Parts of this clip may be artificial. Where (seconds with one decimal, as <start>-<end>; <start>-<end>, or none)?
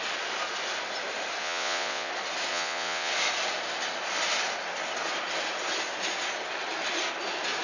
1.4-2.1; 2.5-3.1